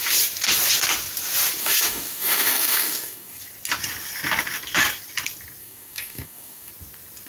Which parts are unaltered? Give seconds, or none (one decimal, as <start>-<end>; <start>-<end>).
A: 0.0-1.6; 3.4-5.6; 6.7-7.3